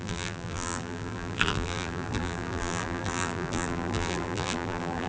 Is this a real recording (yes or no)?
no